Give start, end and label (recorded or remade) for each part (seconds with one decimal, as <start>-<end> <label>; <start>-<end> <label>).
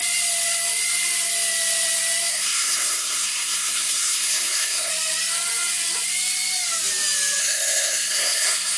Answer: 0.0-2.3 recorded; 2.3-4.9 remade; 4.9-7.4 recorded; 7.4-8.8 remade